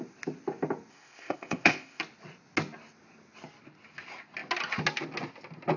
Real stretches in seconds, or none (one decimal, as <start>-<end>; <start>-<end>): 0.0-0.9; 2.0-5.8